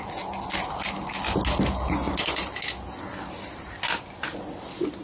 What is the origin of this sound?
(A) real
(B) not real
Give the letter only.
A